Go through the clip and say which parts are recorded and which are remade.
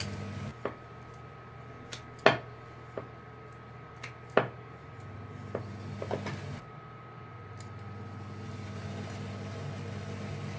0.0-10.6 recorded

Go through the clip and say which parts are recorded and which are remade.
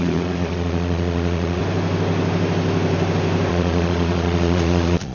0.0-1.6 remade; 1.6-3.5 recorded; 3.5-5.1 remade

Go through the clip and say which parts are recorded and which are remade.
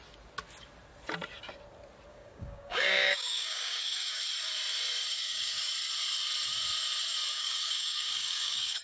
0.0-2.1 recorded; 2.1-4.2 remade; 4.2-5.1 recorded; 5.1-5.7 remade; 5.7-7.3 recorded; 7.3-8.8 remade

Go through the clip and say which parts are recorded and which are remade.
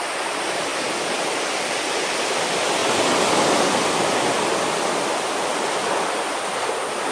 0.0-0.7 remade; 0.7-2.3 recorded; 2.3-2.8 remade; 2.8-7.1 recorded